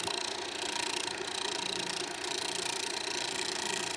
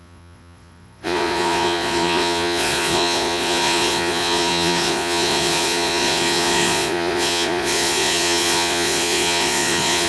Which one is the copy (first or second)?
second